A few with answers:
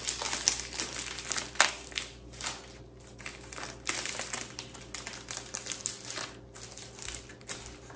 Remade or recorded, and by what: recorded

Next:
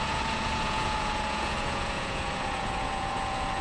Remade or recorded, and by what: remade, vocoder, Vocos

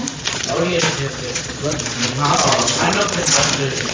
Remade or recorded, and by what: remade, vocoder, Vocos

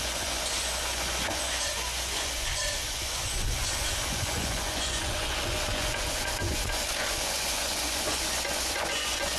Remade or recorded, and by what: remade, vocoder, Vocos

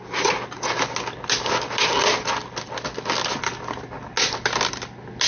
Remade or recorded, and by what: recorded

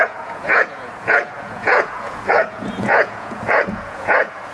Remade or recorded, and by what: remade, vocoder, Vocos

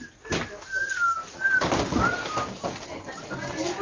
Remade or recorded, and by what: recorded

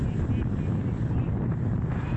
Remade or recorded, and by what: recorded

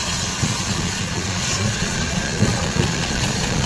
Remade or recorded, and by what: remade, vocoder, Vocos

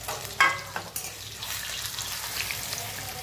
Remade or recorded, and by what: recorded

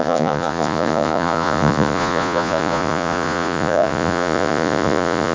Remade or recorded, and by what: remade, vocoder, Vocos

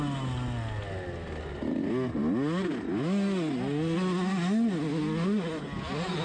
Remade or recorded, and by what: recorded